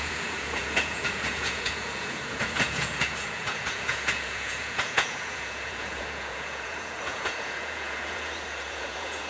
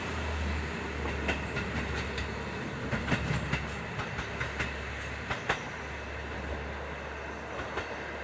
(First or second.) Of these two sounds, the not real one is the first